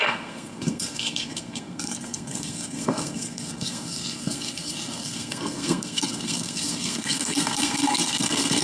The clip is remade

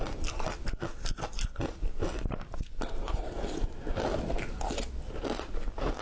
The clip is recorded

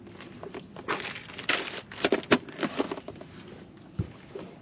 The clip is recorded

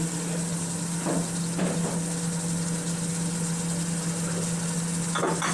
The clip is recorded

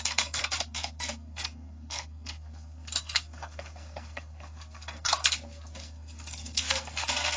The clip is remade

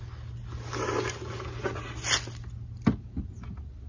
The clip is recorded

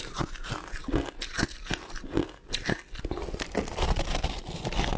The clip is recorded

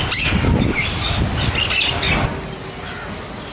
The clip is recorded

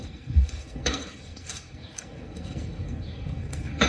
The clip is remade